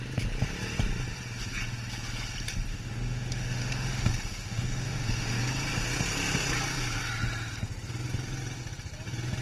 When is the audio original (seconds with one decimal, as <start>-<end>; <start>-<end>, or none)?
0.0-2.7; 5.4-9.4